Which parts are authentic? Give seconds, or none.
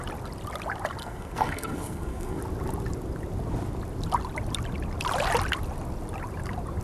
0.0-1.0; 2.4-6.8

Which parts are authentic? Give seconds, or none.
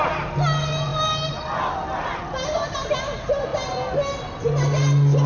0.0-5.3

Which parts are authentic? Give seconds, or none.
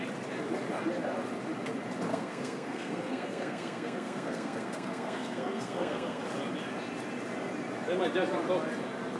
0.0-2.1; 6.2-9.2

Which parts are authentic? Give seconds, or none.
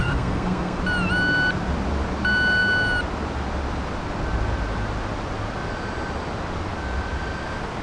0.8-7.8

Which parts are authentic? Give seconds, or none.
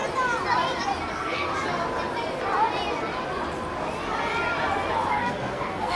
0.0-1.1; 1.5-5.1